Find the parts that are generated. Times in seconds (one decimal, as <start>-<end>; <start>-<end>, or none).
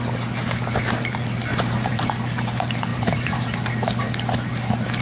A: 1.5-2.1; 2.9-3.7